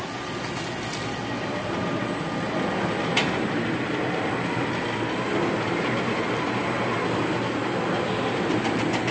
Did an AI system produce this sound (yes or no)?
no